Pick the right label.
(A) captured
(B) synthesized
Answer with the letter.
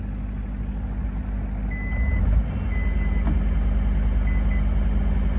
A